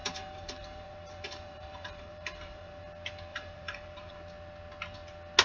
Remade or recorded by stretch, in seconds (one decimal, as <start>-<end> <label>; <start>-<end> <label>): 0.0-2.8 remade; 2.8-3.3 recorded; 3.3-4.1 remade; 4.1-5.4 recorded